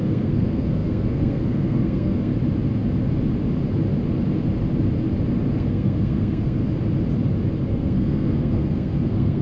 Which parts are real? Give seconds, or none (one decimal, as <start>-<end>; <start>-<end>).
2.3-5.5; 6.6-7.7